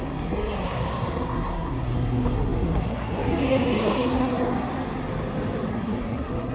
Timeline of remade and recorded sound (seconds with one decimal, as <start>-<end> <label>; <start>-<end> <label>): 0.0-4.7 remade; 4.7-5.7 recorded; 5.7-6.5 remade